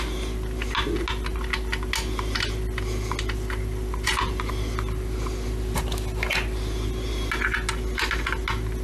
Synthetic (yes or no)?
no